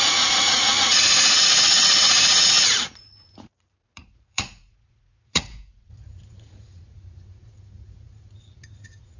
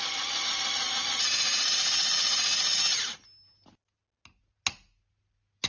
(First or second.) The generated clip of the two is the first